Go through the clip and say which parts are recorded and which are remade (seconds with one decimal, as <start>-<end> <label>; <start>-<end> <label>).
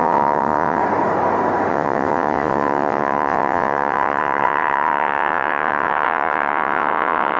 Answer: 0.0-0.8 remade; 0.8-1.7 recorded; 1.7-7.4 remade